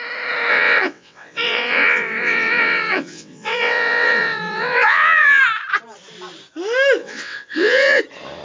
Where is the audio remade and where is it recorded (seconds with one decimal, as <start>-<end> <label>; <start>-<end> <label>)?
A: 0.0-0.5 recorded; 0.5-5.4 remade; 5.4-7.0 recorded; 7.0-8.0 remade; 8.0-8.4 recorded